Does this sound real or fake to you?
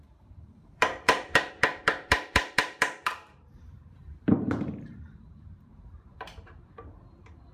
fake